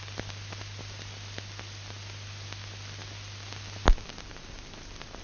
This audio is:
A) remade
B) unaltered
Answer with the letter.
B